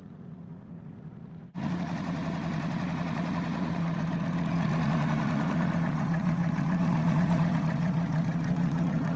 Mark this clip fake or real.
fake